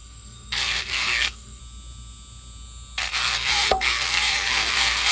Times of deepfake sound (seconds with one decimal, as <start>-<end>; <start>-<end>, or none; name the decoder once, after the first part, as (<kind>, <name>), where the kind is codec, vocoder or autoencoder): 0.0-1.6 (codec, SNAC); 3.1-5.1